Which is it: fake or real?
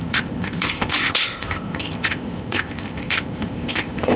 fake